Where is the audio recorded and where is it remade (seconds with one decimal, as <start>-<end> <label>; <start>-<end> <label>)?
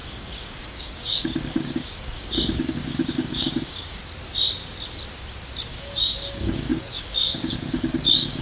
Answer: 0.0-4.0 remade; 4.0-5.7 recorded; 5.7-8.4 remade